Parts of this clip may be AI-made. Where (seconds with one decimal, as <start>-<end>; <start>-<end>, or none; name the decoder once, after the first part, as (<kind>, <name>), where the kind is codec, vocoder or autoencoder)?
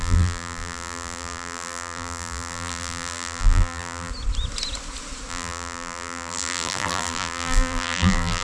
0.0-4.1 (vocoder, BigVGAN v2); 5.3-8.4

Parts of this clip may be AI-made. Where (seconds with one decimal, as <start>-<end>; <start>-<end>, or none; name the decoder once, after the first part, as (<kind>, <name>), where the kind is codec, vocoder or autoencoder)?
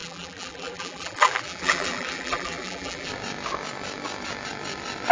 0.0-3.1 (vocoder, BigVGAN v2)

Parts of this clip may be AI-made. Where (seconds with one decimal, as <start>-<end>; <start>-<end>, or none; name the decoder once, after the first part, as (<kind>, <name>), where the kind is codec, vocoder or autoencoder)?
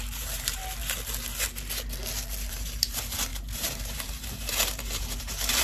0.0-0.6 (vocoder, BigVGAN v2); 2.5-5.6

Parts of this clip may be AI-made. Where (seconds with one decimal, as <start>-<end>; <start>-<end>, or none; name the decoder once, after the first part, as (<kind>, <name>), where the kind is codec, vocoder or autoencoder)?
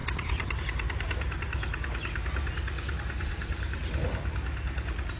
0.0-0.6 (vocoder, BigVGAN v2); 3.2-3.8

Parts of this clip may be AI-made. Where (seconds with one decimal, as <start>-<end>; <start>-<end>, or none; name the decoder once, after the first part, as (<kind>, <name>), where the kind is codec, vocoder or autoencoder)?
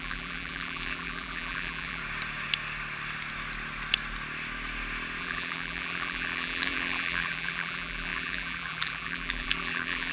0.0-2.0 (vocoder, BigVGAN v2); 5.2-10.1